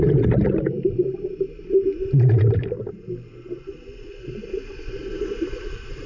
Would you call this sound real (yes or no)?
yes